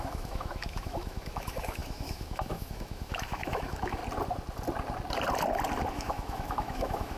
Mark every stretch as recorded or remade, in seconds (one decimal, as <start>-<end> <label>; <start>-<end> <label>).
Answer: 0.0-4.0 remade; 4.0-5.9 recorded; 5.9-7.2 remade